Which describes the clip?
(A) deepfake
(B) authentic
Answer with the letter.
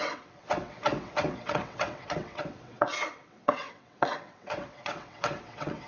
A